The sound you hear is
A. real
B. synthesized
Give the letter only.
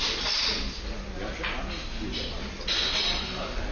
A